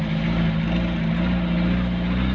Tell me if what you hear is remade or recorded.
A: recorded